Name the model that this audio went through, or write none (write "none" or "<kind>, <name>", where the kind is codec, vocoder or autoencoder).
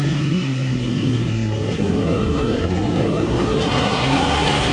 codec, SNAC